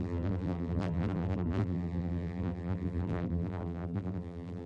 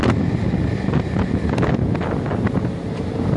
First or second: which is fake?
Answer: first